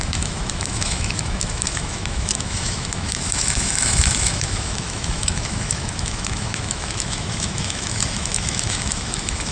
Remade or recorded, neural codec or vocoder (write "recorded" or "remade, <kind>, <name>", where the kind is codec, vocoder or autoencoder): remade, autoencoder, DAC-VAE